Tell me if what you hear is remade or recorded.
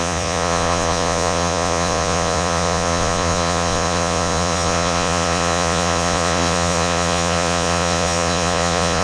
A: remade